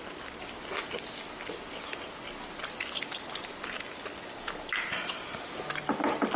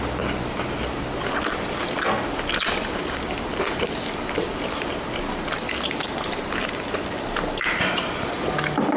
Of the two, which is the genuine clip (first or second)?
first